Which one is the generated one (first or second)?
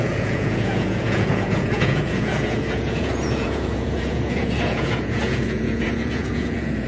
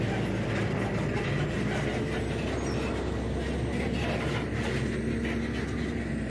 first